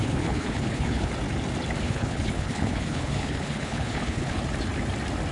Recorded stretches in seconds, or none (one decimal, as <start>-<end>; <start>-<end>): 1.1-1.8; 4.4-5.3